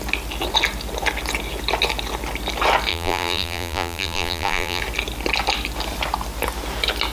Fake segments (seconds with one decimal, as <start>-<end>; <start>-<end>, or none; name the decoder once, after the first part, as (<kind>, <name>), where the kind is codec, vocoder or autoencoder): 2.9-4.8 (vocoder, BigVGAN v2)